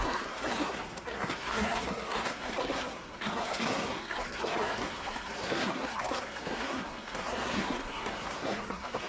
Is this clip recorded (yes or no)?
no